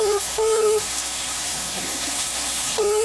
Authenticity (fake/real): fake